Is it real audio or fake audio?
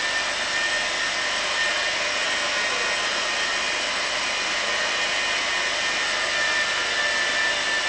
real